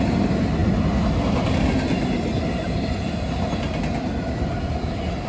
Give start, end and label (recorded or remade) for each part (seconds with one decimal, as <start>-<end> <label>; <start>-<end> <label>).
0.0-5.3 recorded